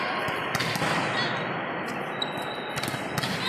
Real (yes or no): yes